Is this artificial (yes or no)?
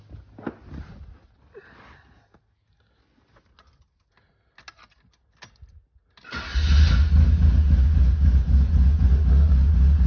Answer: no